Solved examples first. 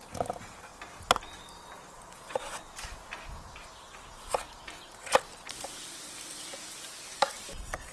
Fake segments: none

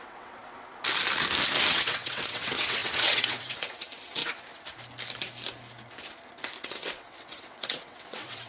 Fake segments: 0.0-0.4 (vocoder, WaveNeXt); 1.7-4.2; 6.6-8.5

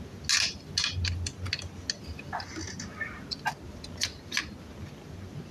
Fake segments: none

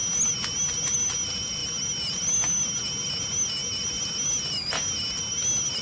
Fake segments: none

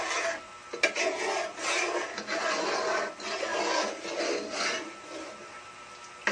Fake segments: none

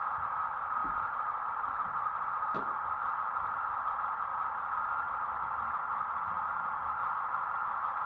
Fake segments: 0.8-2.6 (vocoder, BigVGAN v2); 4.3-4.8; 6.8-7.5

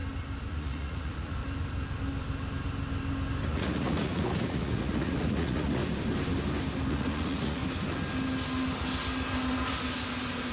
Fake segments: 0.5-1.4 (vocoder, Vocos); 3.5-5.8; 6.9-7.6